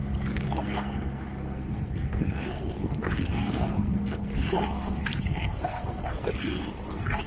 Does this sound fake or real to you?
fake